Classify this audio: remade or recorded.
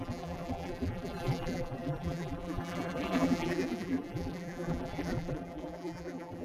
remade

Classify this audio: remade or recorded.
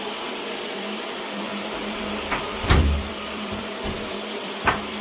remade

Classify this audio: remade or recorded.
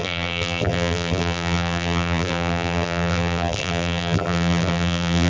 remade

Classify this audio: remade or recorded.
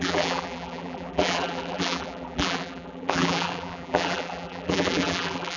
remade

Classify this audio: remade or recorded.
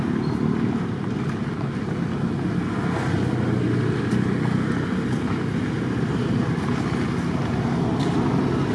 recorded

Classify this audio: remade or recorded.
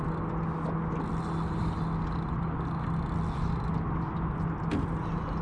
recorded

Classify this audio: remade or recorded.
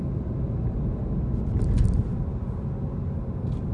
recorded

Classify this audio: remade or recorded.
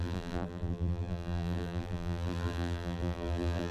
remade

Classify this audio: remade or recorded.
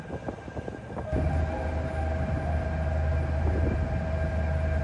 recorded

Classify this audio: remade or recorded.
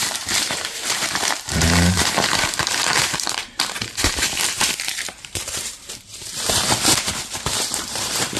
remade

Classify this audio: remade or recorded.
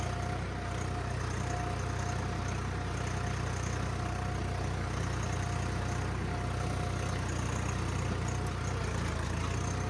recorded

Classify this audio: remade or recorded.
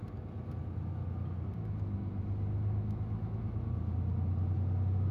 recorded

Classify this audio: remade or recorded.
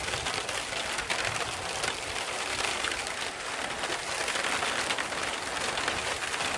recorded